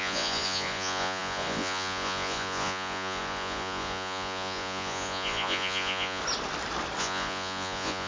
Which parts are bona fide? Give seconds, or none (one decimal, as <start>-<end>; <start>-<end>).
6.2-7.0